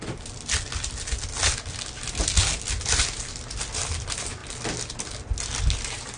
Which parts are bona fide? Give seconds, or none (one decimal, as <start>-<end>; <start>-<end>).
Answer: 0.0-6.2